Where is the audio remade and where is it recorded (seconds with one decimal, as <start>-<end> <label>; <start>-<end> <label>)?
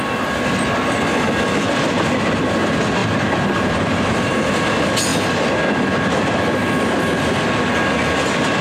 0.0-3.0 recorded; 3.0-4.5 remade; 4.5-8.6 recorded